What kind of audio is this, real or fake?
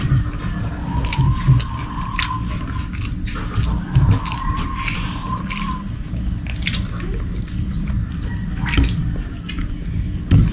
real